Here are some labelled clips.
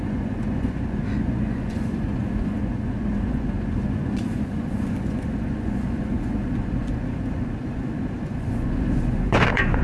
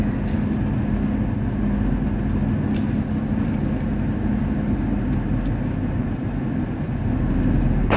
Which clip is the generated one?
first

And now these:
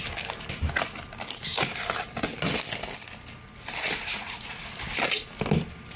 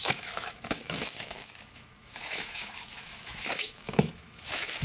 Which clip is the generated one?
second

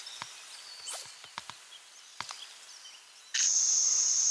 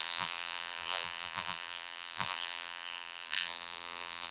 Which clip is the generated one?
second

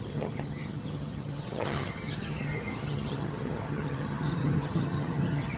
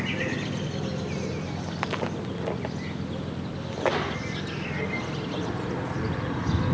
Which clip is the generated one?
first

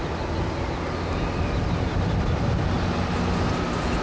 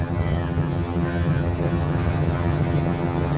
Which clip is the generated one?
second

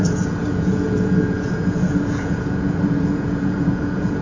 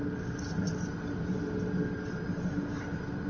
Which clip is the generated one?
first